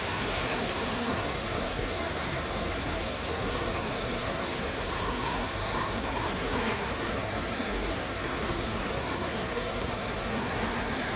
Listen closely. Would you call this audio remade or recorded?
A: remade